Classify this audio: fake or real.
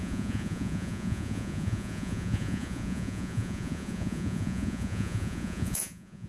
fake